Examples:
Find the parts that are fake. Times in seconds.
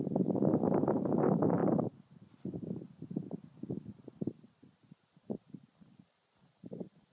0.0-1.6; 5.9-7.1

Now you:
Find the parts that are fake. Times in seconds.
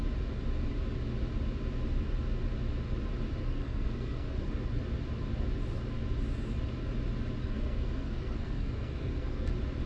3.4-4.8; 7.4-9.5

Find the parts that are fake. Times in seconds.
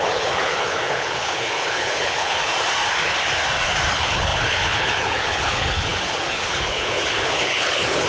0.0-2.5; 3.9-8.1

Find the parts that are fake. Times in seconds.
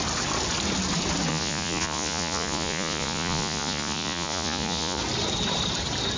1.3-5.0